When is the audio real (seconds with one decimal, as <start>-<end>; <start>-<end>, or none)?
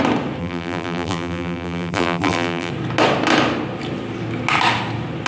0.0-0.4; 2.7-5.3